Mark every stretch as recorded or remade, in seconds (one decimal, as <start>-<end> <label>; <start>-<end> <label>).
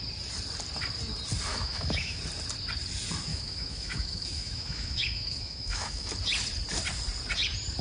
0.0-1.5 recorded; 1.5-2.2 remade; 2.2-3.3 recorded; 3.3-6.1 remade; 6.1-7.8 recorded